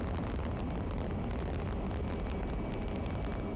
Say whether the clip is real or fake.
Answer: real